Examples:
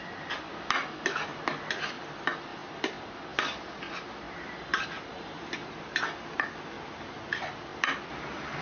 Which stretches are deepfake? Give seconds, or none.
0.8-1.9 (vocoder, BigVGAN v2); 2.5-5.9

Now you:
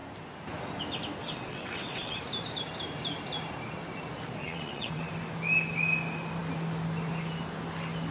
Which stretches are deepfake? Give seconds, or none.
1.2-2.2 (vocoder, WaveNeXt); 4.4-5.1

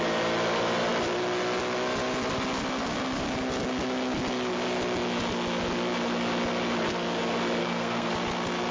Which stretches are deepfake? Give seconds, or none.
7.6-8.1 (codec, SNAC)